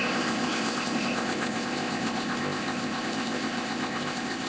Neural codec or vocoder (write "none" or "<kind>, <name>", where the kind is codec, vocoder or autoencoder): codec, ZipCodec